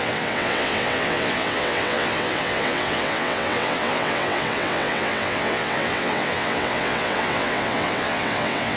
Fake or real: fake